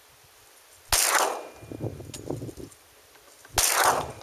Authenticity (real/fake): real